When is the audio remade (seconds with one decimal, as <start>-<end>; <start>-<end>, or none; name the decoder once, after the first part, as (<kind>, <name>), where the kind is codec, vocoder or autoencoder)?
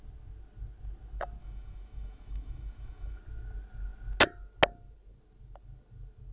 1.4-3.2 (autoencoder, DAC-VAE)